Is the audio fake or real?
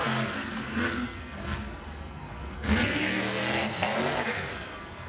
fake